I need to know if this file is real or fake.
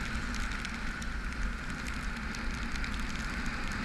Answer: real